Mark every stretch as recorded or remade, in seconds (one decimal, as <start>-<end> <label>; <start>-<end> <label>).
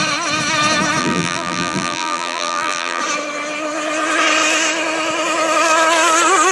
0.0-1.0 recorded; 1.0-3.0 remade; 3.0-6.5 recorded